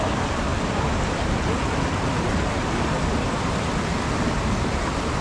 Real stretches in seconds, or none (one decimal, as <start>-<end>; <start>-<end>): 0.0-5.2